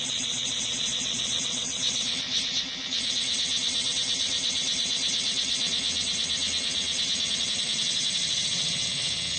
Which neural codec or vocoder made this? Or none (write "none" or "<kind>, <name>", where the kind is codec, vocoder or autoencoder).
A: vocoder, WaveNeXt